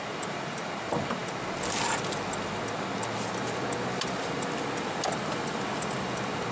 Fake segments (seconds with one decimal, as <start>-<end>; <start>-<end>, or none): none